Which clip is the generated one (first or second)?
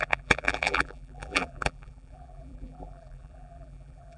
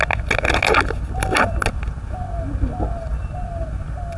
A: first